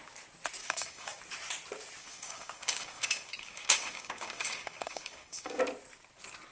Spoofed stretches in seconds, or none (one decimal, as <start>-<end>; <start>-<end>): 0.6-1.2; 2.0-5.6

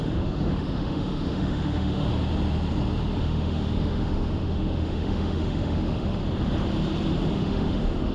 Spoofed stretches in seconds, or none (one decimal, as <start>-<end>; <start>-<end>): 0.0-2.1; 3.2-6.2; 7.3-8.1

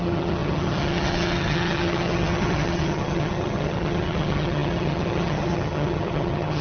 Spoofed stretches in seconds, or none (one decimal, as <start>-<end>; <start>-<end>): 0.0-6.6

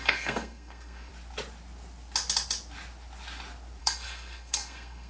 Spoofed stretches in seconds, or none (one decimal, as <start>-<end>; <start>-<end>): 0.0-1.1; 3.8-5.1

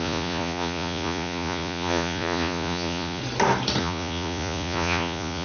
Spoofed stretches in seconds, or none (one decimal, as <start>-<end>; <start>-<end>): 0.0-3.2; 3.8-5.4

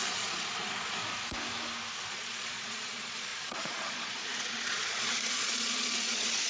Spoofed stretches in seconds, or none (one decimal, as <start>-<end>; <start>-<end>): 0.0-1.0; 2.1-6.5

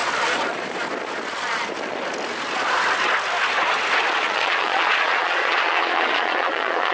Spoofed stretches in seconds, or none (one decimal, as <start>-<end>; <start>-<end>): 4.1-6.9

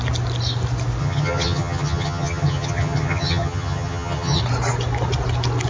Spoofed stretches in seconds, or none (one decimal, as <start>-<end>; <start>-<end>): 1.0-4.4